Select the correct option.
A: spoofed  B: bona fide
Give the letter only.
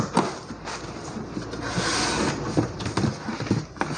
B